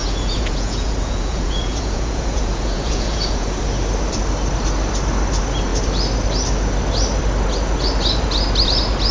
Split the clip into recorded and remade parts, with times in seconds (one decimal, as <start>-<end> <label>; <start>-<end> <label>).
0.0-3.6 remade; 3.6-9.1 recorded